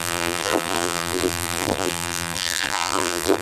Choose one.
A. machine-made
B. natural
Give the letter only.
A